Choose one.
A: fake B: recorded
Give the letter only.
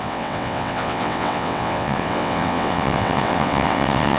A